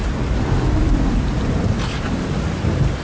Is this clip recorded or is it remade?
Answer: recorded